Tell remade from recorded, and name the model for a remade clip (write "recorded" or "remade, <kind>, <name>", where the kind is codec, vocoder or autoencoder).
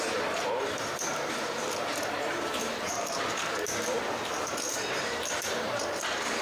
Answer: remade, vocoder, BigVGAN v2